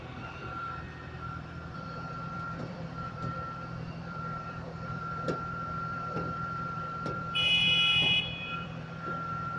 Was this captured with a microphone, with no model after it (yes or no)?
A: no